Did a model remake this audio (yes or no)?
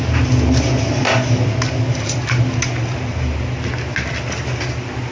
no